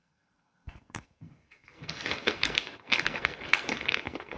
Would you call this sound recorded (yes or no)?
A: no